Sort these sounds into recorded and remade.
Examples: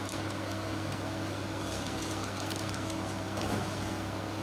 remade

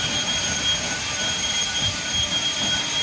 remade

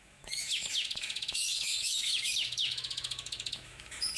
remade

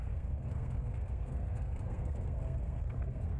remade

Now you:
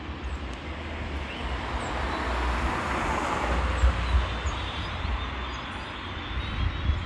recorded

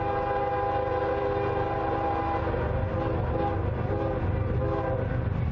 recorded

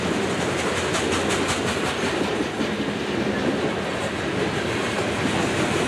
recorded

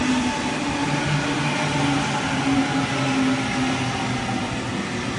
recorded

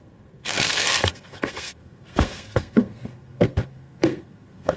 remade